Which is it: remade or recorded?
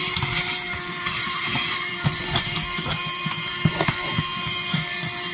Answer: remade